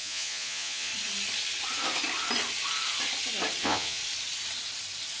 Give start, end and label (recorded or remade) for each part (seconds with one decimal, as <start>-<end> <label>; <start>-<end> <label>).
0.0-0.9 remade; 0.9-3.6 recorded; 3.6-4.0 remade; 4.0-5.2 recorded